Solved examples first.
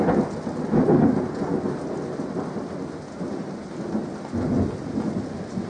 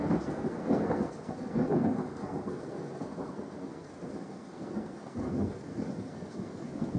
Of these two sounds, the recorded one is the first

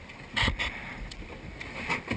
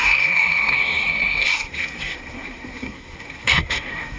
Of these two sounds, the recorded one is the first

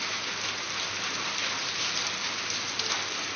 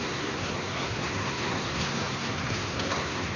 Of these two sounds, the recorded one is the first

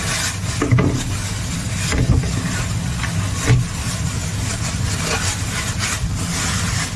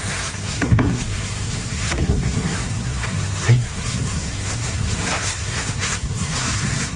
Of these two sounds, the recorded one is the first